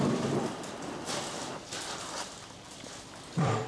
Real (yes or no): no